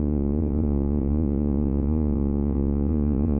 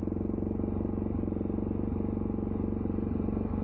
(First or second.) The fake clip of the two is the first